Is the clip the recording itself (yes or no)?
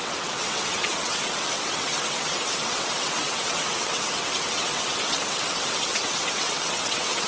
no